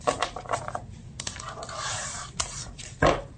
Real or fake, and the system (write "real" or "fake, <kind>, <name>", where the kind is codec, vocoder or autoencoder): real